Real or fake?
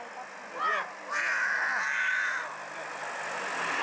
real